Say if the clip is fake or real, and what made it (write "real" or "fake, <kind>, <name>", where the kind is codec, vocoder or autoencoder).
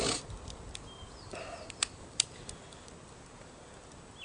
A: real